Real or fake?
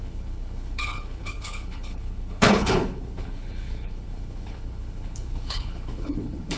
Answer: fake